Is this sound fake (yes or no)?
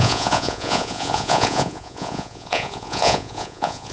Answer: yes